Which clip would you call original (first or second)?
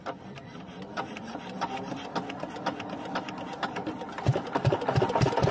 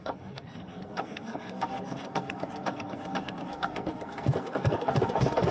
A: first